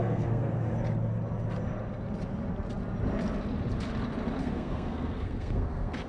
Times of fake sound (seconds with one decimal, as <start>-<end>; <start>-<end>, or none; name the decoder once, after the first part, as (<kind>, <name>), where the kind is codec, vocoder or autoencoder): 0.0-0.7 (codec, SNAC); 4.4-6.1